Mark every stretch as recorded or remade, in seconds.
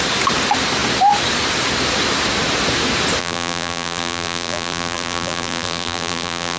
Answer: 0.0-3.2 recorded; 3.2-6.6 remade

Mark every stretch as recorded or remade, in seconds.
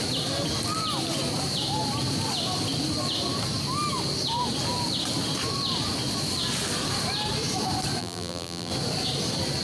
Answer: 0.0-8.0 recorded; 8.0-8.7 remade; 8.7-9.6 recorded